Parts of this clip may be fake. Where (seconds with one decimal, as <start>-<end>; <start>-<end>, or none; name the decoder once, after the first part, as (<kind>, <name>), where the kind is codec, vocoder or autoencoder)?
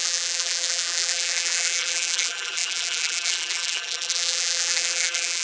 0.0-5.4 (vocoder, BigVGAN v2)